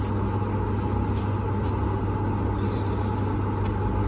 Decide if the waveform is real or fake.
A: real